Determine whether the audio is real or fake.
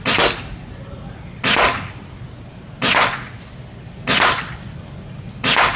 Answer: real